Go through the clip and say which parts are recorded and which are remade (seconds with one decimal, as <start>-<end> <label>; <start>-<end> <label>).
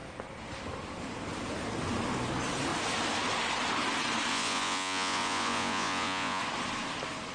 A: 0.0-4.3 recorded; 4.3-6.4 remade; 6.4-7.3 recorded